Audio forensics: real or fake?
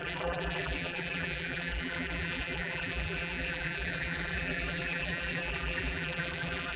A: fake